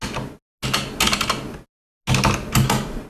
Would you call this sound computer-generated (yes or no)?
no